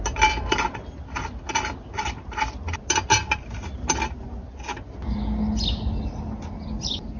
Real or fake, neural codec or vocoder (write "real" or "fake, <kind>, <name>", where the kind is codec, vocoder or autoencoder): real